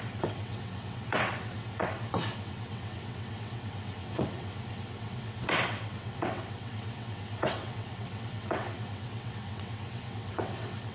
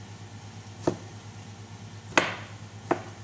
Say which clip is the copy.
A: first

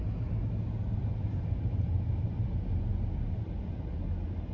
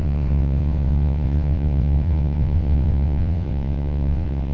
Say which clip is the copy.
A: second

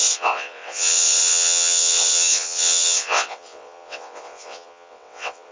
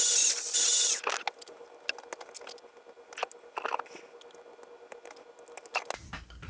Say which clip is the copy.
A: first